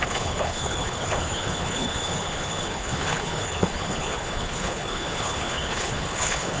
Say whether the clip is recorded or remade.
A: remade